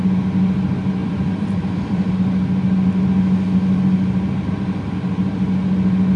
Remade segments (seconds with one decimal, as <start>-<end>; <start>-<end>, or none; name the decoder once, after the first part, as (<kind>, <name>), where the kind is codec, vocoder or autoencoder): 1.0-2.1 (vocoder, BigVGAN v2)